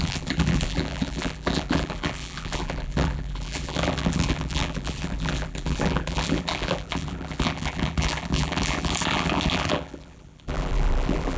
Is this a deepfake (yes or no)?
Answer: yes